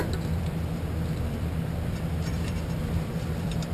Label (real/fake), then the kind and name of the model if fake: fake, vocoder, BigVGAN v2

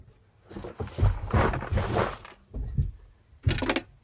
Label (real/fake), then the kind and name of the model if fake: real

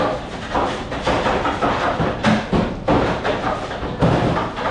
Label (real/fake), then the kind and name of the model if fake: real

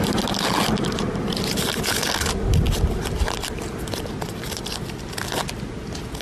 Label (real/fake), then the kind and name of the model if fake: real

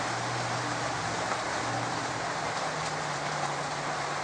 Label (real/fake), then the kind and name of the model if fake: fake, vocoder, BigVGAN v2